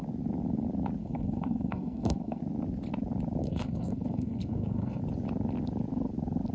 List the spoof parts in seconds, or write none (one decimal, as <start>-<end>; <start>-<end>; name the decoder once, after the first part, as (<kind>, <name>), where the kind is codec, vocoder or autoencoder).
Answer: 1.0-2.4 (codec, SNAC); 3.4-5.0